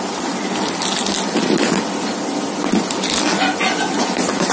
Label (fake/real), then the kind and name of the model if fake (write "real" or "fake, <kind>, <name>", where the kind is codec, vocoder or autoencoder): real